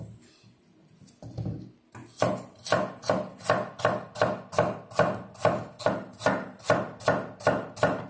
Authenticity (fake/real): real